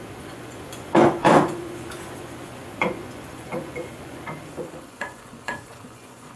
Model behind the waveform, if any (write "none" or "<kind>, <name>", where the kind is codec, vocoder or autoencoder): vocoder, Vocos